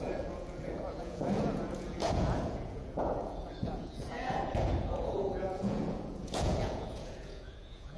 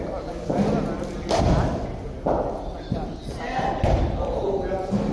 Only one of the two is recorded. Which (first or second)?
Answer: second